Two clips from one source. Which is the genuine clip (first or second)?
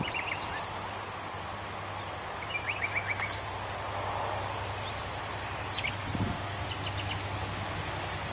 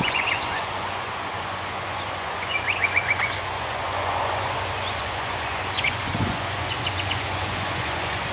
first